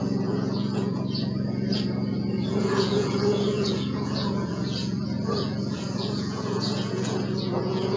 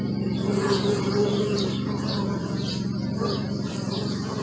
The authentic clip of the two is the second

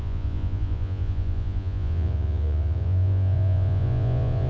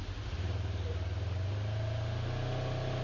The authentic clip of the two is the second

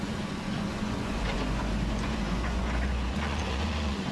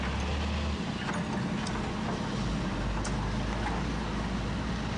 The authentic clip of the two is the second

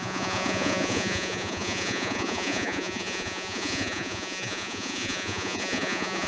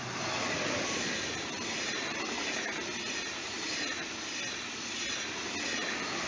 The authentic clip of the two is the second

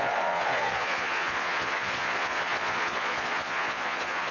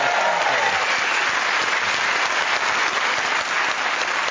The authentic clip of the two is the second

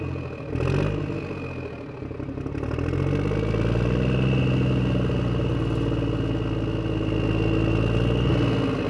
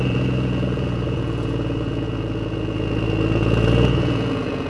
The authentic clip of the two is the first